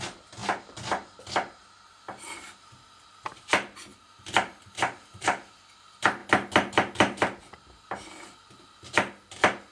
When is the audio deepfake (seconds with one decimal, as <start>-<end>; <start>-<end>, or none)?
3.9-5.5